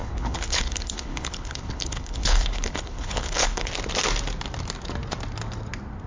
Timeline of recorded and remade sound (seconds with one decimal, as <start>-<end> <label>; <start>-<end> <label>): 0.0-3.7 remade; 3.7-6.1 recorded